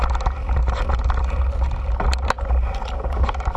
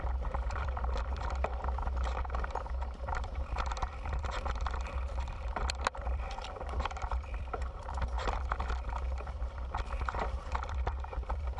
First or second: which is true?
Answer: first